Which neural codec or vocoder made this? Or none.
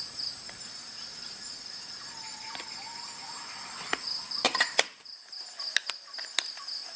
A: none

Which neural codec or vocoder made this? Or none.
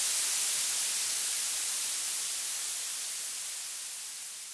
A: none